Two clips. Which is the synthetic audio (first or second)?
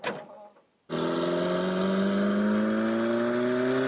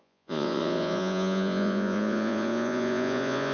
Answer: second